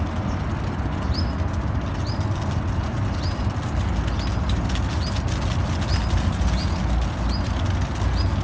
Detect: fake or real real